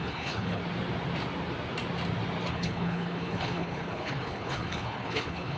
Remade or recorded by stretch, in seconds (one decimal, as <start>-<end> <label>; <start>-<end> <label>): 0.0-0.6 remade; 0.6-2.5 recorded; 2.5-5.6 remade